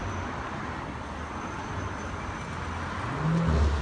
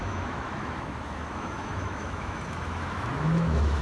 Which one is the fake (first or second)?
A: second